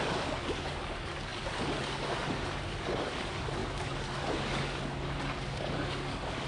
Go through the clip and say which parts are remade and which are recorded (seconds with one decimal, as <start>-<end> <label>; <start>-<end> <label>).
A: 0.0-6.5 remade